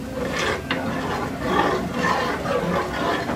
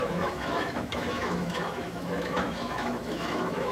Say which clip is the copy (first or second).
second